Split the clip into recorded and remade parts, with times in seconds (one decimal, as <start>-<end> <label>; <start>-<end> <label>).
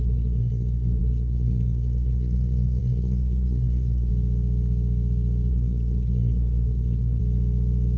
0.0-4.1 remade; 4.1-5.5 recorded; 5.5-7.2 remade; 7.2-8.0 recorded